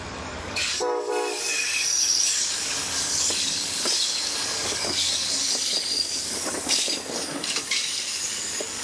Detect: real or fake fake